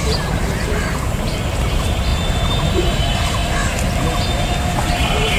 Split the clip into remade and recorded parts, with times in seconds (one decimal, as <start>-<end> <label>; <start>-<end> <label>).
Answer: 0.0-2.1 remade; 2.1-2.7 recorded; 2.7-3.4 remade; 3.4-4.8 recorded; 4.8-5.4 remade